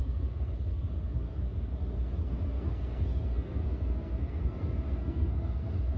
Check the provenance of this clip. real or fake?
fake